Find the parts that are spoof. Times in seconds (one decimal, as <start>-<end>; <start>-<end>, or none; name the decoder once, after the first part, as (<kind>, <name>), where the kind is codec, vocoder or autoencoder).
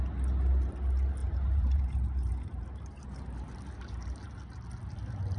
1.2-4.4 (vocoder, BigVGAN v2)